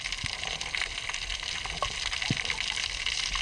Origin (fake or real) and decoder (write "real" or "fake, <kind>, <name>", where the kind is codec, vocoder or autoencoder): real